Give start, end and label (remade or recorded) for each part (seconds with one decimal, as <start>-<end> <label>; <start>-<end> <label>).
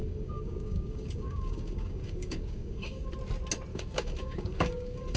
0.0-3.1 remade; 3.1-3.7 recorded; 3.7-5.2 remade